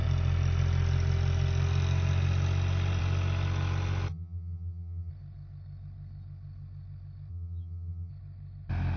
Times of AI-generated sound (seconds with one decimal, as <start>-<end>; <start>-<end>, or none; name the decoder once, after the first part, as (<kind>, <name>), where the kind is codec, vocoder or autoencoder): 4.1-5.1 (vocoder, HiFi-GAN); 7.3-8.1